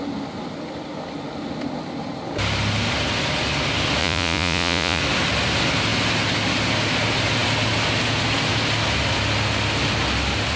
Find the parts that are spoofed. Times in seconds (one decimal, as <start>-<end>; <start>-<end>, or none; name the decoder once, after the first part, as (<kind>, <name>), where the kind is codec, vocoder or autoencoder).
4.0-5.0 (vocoder, Vocos)